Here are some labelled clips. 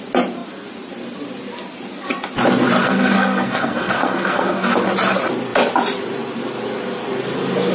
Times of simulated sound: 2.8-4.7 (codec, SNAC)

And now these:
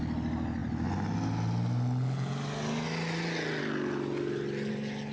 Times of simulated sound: none

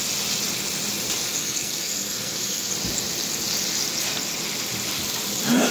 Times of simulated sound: 1.4-2.7 (codec, SNAC)

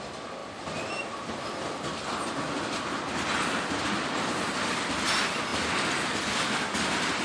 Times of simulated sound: none

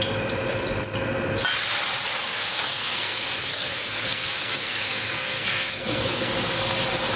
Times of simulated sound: 2.3-6.6 (codec, SNAC)

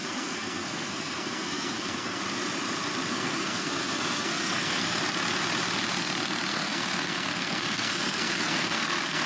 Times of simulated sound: 0.0-2.2 (codec, SNAC); 3.1-5.0; 6.5-9.3

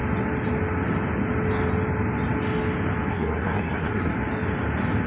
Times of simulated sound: 3.1-4.1 (codec, SNAC)